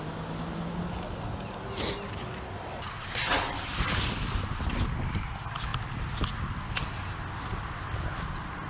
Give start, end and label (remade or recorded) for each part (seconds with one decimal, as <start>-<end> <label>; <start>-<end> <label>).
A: 0.0-8.7 recorded